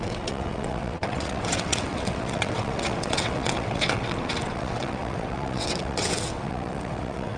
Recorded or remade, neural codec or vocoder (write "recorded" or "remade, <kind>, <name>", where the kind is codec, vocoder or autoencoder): remade, vocoder, WaveNeXt